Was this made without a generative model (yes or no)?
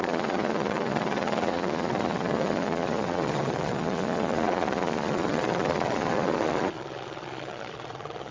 no